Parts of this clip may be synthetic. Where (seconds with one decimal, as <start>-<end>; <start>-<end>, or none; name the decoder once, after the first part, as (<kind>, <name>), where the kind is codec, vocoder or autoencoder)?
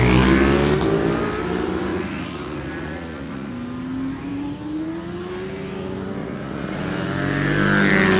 1.9-3.5 (vocoder, Vocos); 6.2-6.8